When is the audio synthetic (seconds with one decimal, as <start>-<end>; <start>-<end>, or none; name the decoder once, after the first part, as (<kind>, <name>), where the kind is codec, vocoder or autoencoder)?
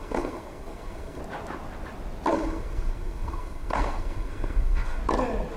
0.0-1.2 (codec, SNAC); 2.3-5.0